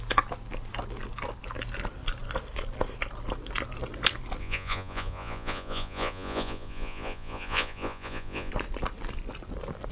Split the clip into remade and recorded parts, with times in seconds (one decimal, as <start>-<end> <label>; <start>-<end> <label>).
0.0-4.4 recorded; 4.4-8.5 remade; 8.5-9.9 recorded